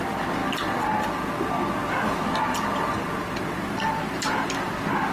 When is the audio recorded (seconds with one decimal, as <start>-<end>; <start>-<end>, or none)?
0.0-5.1